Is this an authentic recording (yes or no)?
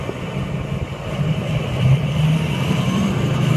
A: no